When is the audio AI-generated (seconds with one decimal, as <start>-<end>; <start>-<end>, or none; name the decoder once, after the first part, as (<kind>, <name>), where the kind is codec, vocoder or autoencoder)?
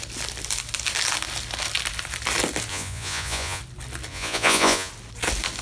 2.7-3.6 (vocoder, Vocos); 4.1-4.9